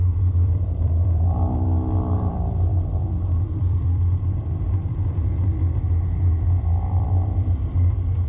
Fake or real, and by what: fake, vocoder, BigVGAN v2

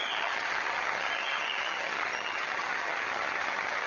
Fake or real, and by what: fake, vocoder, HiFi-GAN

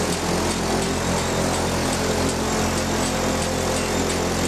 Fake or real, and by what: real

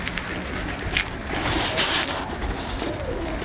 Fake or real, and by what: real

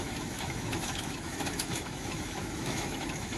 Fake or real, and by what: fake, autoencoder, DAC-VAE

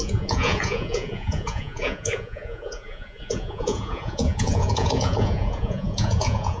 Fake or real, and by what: fake, vocoder, Vocos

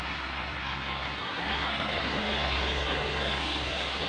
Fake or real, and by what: fake, codec, SNAC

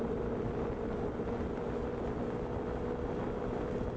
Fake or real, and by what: real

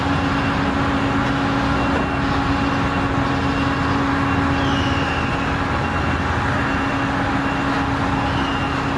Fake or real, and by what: real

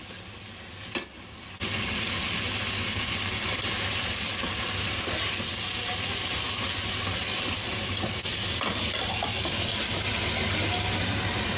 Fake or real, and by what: real